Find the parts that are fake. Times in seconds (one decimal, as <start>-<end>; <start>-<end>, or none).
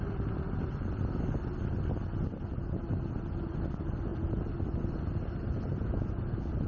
none